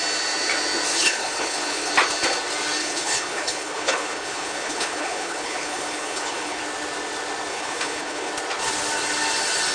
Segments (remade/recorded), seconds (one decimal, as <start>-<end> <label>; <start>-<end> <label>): 0.0-0.9 recorded; 0.9-1.9 remade; 1.9-2.8 recorded; 2.8-6.6 remade; 6.6-7.5 recorded; 7.5-8.3 remade; 8.3-9.7 recorded